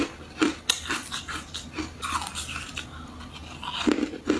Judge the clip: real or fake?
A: real